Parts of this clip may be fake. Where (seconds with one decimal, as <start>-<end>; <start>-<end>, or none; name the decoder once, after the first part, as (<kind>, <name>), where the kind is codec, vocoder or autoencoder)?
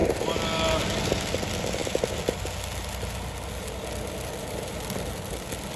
none